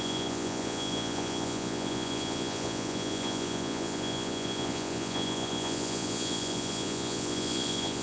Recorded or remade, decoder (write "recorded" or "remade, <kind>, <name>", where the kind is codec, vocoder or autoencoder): remade, vocoder, Vocos